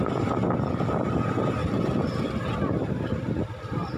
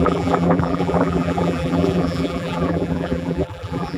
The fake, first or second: second